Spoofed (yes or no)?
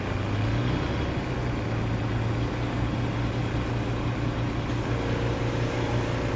no